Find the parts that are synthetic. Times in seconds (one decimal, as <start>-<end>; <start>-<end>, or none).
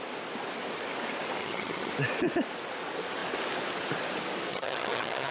1.4-1.9; 4.5-5.3